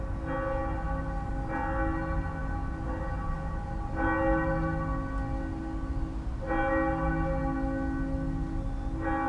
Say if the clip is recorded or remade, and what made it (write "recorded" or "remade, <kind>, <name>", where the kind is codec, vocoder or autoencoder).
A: recorded